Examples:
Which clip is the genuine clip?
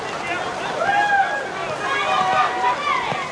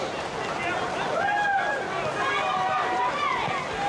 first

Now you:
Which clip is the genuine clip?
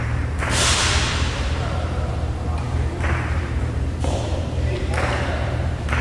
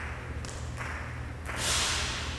second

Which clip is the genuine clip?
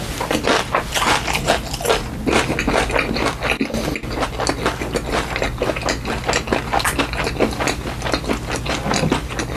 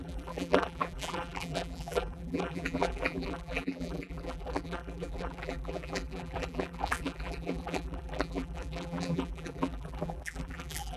first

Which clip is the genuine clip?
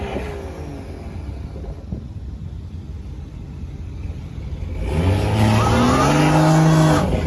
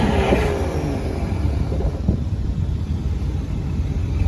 first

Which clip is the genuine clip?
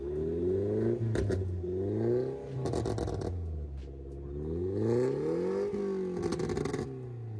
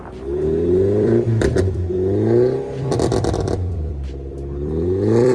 first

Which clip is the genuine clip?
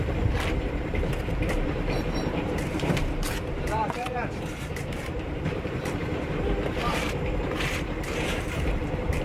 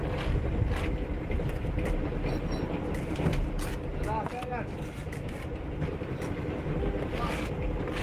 second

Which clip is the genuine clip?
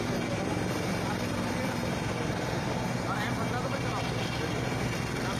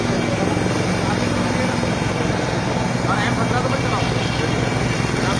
second